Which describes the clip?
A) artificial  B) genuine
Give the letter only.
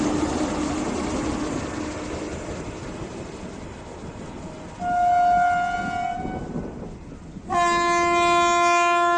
B